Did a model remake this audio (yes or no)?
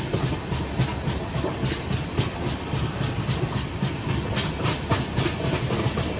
no